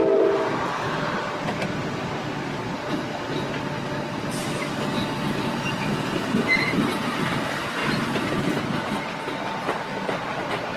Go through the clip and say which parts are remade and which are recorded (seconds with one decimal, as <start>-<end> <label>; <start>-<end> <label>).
0.0-10.8 recorded